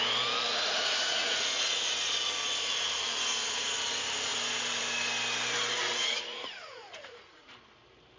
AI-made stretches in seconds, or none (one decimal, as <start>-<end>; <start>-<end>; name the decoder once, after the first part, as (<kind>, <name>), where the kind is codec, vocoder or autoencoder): 0.5-2.0 (vocoder, Vocos); 6.0-7.5